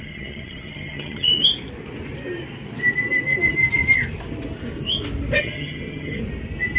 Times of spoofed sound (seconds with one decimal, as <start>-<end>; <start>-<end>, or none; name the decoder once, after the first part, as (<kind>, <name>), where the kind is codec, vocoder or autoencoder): 0.0-1.3 (vocoder, HiFi-GAN); 5.4-6.2